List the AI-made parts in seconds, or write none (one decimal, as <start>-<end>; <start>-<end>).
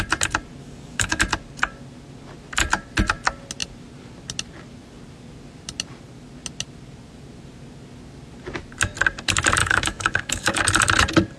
0.6-1.2; 9.6-10.6